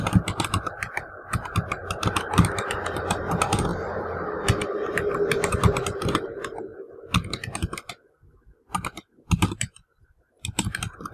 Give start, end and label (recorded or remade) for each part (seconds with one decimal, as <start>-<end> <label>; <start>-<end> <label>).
0.0-6.7 remade; 6.7-7.9 recorded; 7.9-11.1 remade